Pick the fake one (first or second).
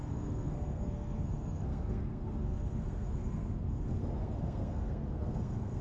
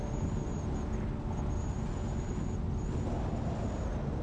first